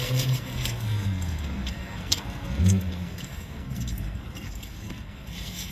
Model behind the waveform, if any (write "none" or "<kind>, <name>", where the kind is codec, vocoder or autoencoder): codec, SNAC